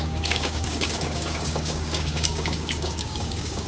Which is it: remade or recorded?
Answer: remade